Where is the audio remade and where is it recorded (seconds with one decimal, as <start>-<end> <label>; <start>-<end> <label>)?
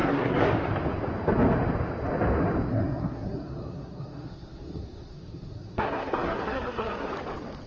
0.0-0.5 remade; 0.5-2.7 recorded; 2.7-7.1 remade; 7.1-7.7 recorded